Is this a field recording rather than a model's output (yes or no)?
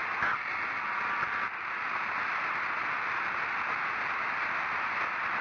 yes